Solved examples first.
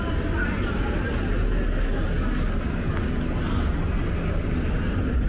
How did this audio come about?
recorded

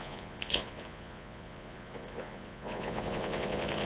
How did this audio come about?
remade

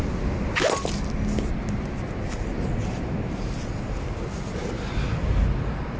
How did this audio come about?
recorded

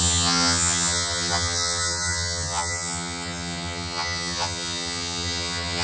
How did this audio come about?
remade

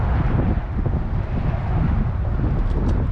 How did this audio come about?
recorded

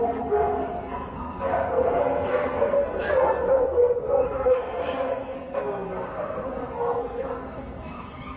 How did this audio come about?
remade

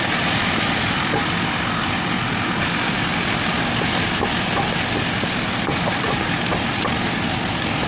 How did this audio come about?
recorded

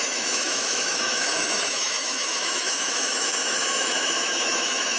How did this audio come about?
remade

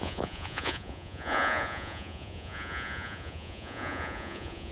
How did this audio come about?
remade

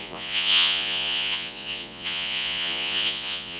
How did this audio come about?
remade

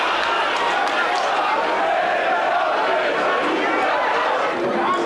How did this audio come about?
recorded